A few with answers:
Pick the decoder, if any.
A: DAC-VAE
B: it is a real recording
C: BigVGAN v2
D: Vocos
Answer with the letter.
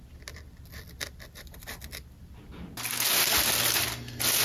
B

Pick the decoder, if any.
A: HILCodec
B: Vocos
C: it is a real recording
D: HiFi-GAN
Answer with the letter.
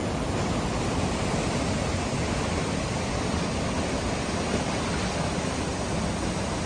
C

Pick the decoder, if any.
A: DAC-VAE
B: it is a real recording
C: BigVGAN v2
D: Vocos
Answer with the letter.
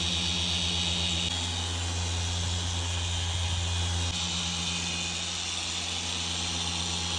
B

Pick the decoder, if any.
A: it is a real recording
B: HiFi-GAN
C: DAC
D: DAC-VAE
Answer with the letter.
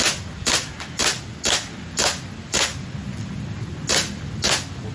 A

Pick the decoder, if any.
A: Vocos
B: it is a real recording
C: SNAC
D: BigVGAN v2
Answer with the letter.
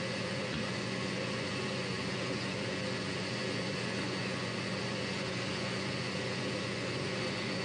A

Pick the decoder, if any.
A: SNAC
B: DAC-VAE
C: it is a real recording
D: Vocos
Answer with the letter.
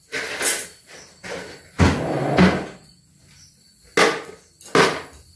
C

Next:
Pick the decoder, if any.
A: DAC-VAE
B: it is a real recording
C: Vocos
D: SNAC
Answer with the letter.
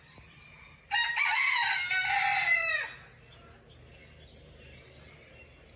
B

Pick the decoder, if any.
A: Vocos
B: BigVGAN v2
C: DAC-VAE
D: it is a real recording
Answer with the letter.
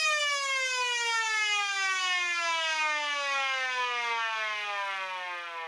D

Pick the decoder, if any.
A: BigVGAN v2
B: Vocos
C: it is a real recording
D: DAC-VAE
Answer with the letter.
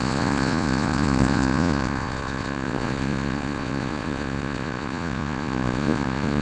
B